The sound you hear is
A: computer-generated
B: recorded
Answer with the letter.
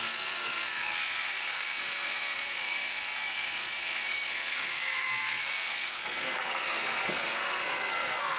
A